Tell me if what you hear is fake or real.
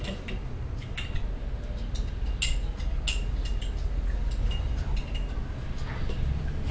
real